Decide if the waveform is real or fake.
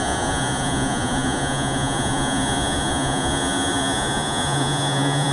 fake